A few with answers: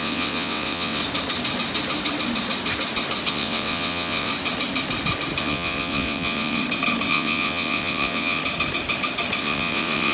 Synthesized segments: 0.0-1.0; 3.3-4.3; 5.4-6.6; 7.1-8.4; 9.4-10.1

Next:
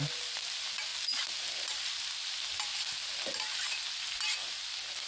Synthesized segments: none